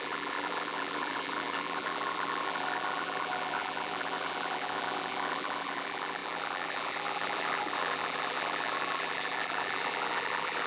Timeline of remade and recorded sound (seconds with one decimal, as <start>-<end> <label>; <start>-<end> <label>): 0.0-10.7 remade